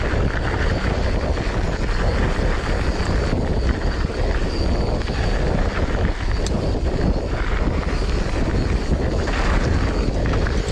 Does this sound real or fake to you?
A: real